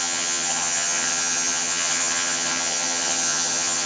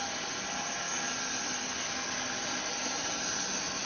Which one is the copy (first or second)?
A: first